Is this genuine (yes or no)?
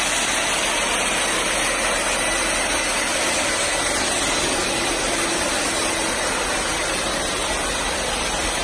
yes